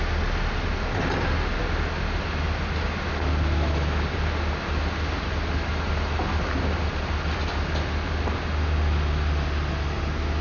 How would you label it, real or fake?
real